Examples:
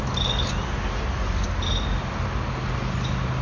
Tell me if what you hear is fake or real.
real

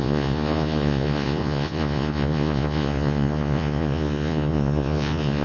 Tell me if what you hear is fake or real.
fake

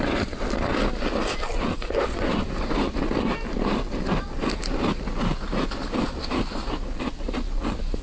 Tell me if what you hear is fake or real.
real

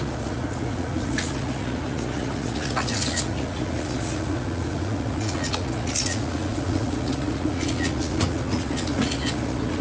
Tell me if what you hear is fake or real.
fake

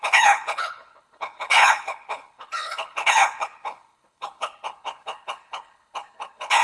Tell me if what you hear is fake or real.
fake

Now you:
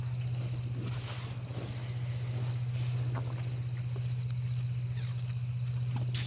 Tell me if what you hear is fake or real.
real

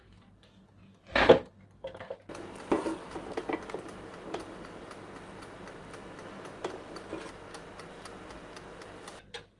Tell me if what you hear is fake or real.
real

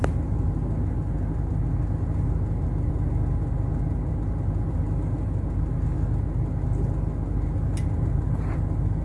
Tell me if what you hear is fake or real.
real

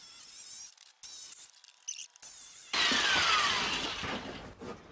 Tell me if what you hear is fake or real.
real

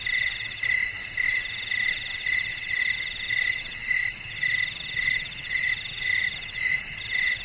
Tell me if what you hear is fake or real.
real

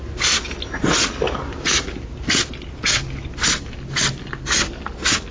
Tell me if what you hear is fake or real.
real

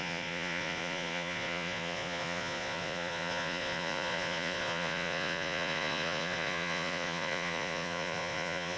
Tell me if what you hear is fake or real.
fake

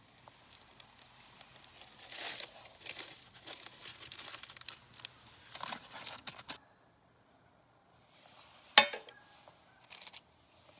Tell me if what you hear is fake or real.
real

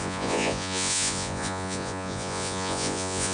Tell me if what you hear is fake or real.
fake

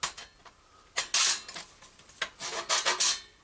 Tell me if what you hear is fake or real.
real